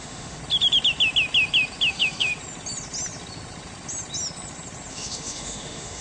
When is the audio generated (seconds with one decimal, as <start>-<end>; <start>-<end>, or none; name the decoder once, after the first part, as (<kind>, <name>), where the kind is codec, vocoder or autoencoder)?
0.0-0.4 (autoencoder, DAC-VAE); 1.9-2.3; 4.9-6.0